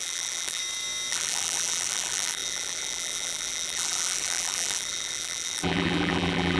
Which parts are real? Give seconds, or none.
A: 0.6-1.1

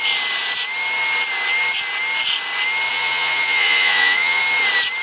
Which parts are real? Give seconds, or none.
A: 0.0-2.9; 4.4-5.0

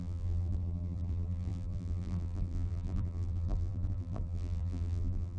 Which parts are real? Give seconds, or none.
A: none

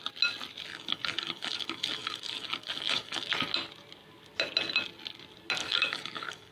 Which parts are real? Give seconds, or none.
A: 0.0-0.7; 3.3-5.6